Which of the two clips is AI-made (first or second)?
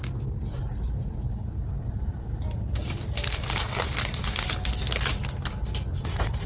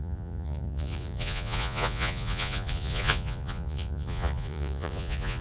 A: second